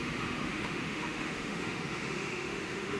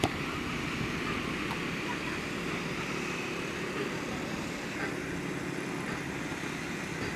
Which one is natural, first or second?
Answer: second